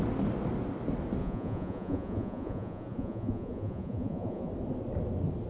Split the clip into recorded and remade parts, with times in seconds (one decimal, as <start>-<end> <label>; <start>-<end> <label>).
0.0-1.2 recorded; 1.2-4.5 remade; 4.5-5.5 recorded